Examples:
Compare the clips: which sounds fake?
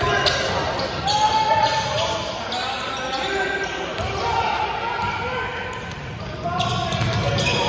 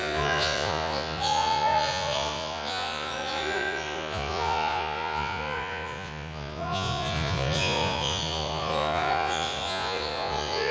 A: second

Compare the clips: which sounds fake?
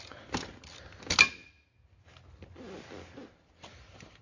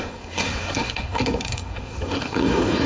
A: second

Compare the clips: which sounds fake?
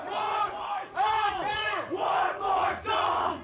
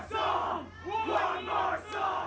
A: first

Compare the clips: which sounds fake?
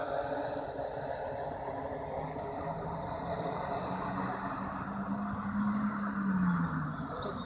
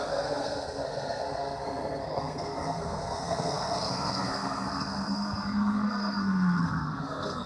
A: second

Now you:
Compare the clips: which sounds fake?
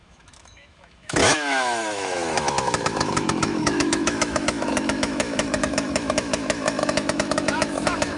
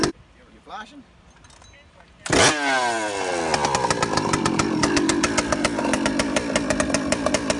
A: first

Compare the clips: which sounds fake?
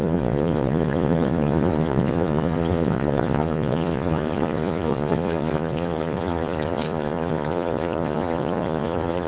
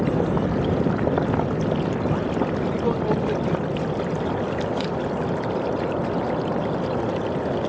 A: first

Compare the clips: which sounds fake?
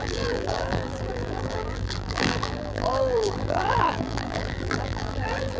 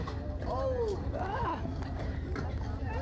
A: first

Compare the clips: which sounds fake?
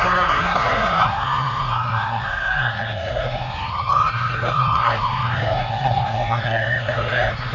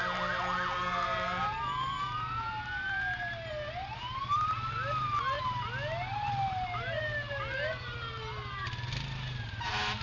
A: first